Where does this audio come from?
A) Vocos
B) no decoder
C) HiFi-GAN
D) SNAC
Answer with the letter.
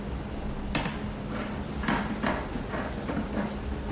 B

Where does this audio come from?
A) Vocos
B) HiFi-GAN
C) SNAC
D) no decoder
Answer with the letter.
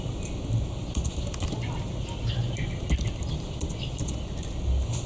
D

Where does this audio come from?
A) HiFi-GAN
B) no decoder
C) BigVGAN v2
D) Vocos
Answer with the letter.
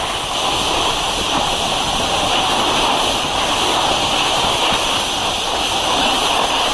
C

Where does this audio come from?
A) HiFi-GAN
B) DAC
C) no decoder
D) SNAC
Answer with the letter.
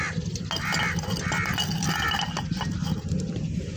C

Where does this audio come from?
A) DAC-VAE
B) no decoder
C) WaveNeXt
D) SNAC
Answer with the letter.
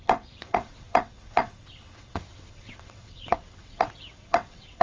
C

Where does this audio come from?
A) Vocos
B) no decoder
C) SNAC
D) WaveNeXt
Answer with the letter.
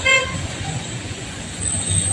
A